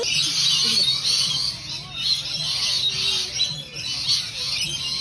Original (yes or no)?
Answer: yes